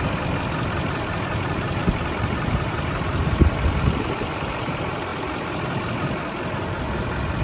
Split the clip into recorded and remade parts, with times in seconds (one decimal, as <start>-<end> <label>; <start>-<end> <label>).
0.0-5.1 remade; 5.1-7.4 recorded